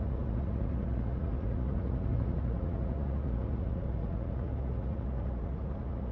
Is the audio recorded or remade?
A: remade